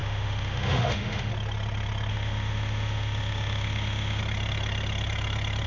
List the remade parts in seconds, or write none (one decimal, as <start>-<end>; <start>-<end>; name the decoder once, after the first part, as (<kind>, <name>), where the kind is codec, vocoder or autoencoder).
0.0-1.3 (autoencoder, DAC-VAE); 2.1-4.2